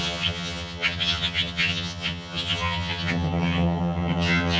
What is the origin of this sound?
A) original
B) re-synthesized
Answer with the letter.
B